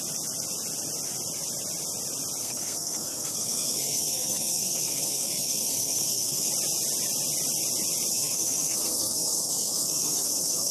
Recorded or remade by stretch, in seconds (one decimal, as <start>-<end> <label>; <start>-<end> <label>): 0.0-2.4 recorded; 2.4-6.5 remade; 6.5-8.1 recorded; 8.1-10.7 remade